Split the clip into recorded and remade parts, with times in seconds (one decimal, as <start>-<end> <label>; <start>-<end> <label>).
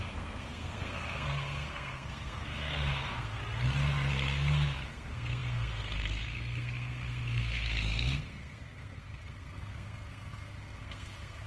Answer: 0.0-3.4 remade; 3.4-4.1 recorded; 4.1-11.5 remade